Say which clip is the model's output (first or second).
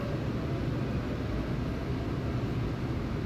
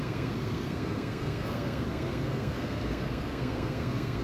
second